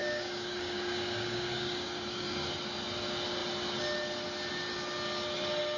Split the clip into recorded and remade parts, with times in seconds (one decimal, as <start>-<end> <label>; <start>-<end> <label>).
0.0-2.5 remade; 2.5-5.8 recorded